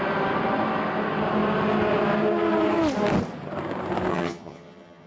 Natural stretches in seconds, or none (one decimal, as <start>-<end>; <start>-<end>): 0.0-4.1